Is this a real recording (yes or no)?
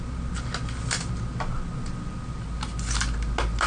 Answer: yes